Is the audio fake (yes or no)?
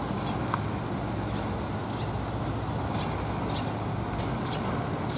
no